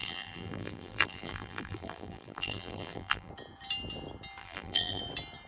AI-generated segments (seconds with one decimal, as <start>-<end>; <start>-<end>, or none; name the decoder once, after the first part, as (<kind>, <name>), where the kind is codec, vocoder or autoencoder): 0.0-3.3 (vocoder, BigVGAN v2); 4.4-5.0